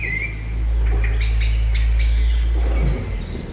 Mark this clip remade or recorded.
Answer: recorded